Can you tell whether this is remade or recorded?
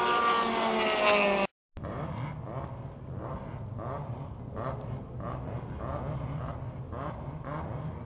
recorded